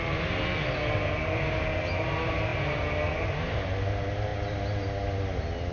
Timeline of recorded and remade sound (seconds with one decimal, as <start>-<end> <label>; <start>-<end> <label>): 0.0-5.7 recorded